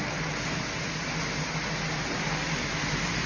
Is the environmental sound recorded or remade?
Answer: recorded